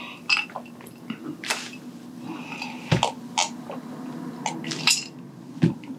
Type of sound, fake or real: real